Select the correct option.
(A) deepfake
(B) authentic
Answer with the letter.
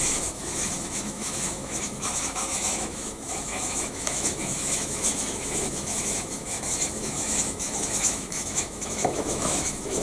A